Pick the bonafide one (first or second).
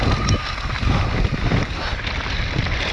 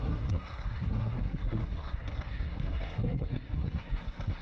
first